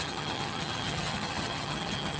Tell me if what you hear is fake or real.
fake